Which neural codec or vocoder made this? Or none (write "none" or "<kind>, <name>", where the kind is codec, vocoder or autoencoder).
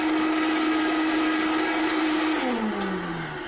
none